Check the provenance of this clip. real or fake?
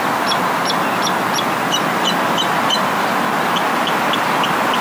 real